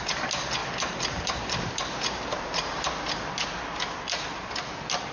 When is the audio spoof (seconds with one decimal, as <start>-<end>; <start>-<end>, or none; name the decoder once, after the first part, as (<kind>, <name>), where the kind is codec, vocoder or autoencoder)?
0.6-2.9 (vocoder, BigVGAN v2)